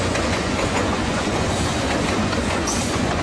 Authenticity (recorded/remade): remade